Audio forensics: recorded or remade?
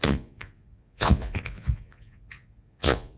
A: remade